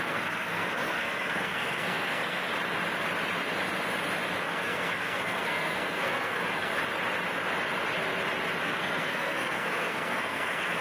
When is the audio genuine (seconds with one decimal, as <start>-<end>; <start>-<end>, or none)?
2.4-4.4; 6.7-8.6

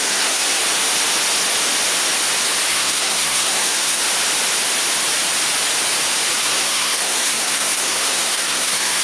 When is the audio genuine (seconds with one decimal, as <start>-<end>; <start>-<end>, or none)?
0.6-2.7; 4.0-6.4

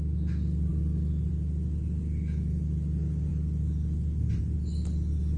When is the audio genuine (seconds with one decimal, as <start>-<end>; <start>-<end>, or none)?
0.0-5.4

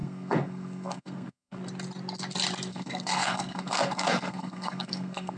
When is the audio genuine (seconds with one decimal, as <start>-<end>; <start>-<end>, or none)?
1.6-2.7

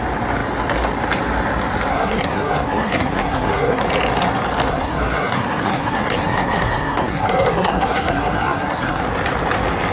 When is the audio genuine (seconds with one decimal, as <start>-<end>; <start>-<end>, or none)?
0.0-1.9; 3.8-4.7; 9.0-9.9

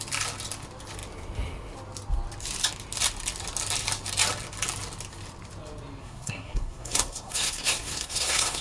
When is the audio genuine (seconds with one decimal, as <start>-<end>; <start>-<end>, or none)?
0.0-6.0

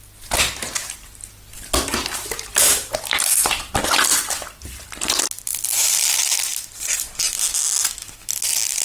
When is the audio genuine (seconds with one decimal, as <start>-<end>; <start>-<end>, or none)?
0.0-8.8

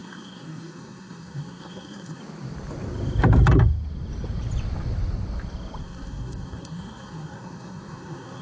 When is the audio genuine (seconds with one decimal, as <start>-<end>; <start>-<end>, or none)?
2.2-5.8